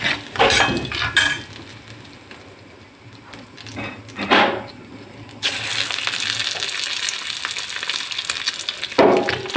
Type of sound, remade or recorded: recorded